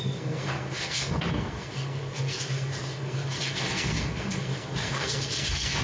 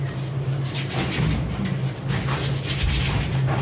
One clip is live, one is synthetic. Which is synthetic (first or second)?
first